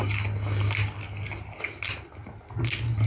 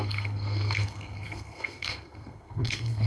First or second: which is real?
first